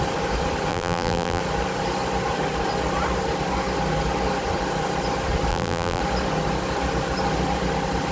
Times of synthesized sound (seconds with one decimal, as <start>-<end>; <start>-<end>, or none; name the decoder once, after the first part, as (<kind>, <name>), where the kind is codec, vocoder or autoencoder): 0.7-1.4 (vocoder, BigVGAN v2); 5.5-6.0